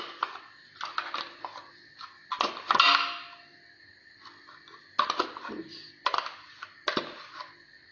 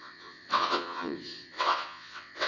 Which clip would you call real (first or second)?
first